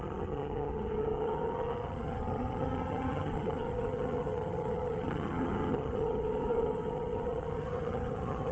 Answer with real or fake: fake